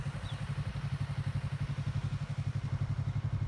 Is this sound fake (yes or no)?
no